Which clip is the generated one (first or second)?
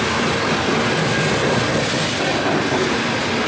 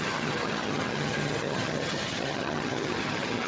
second